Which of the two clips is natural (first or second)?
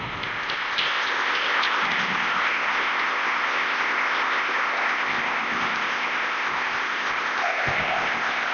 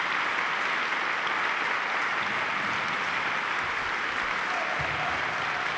second